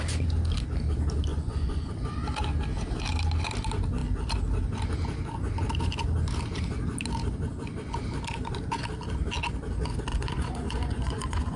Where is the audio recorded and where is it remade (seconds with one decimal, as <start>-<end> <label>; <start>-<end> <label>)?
0.0-1.3 recorded; 1.3-1.9 remade; 1.9-10.1 recorded; 10.1-11.6 remade